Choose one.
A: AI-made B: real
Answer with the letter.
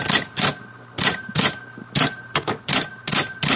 A